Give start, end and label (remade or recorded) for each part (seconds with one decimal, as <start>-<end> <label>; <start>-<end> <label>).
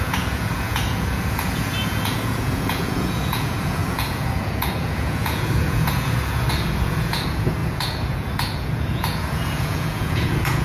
0.0-10.6 remade